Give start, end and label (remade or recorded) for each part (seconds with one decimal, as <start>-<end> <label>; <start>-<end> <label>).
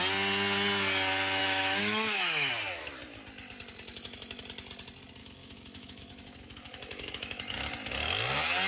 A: 0.0-1.4 recorded; 1.4-2.5 remade; 2.5-5.2 recorded; 5.2-7.7 remade; 7.7-8.7 recorded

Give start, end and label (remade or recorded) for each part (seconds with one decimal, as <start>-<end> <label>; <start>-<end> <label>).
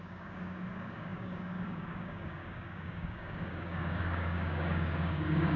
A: 0.0-5.6 remade